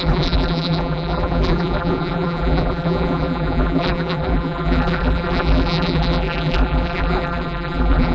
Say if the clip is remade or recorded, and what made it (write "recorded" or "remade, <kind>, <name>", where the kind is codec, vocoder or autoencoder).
remade, vocoder, BigVGAN v2